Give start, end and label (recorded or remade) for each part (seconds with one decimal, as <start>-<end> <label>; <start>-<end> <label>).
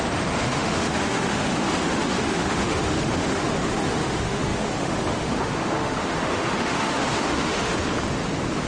0.0-7.7 remade; 7.7-8.7 recorded